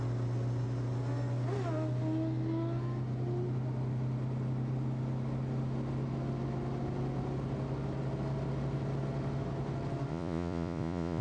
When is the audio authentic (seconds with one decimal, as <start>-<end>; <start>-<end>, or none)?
0.0-10.1